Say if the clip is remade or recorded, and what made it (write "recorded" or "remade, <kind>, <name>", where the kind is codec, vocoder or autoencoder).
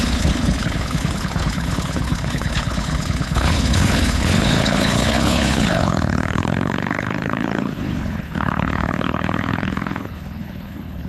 remade, codec, HILCodec